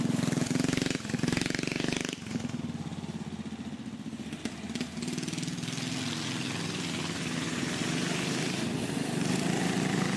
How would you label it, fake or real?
real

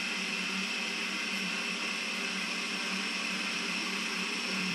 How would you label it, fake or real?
fake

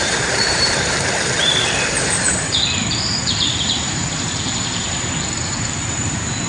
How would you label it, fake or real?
fake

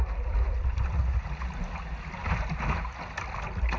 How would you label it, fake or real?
real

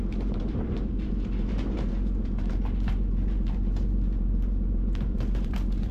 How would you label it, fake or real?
fake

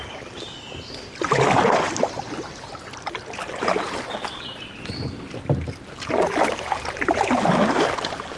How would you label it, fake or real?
real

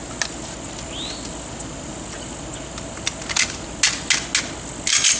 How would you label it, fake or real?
real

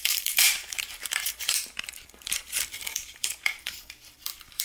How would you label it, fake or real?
fake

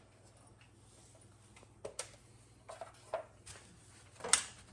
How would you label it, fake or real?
real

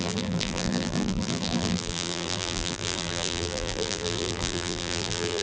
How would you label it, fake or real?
fake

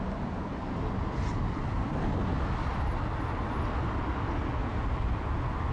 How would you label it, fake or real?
real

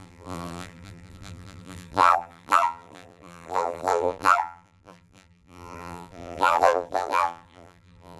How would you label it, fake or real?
fake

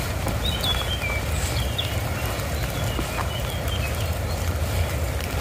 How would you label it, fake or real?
real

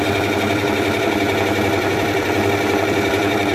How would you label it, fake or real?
fake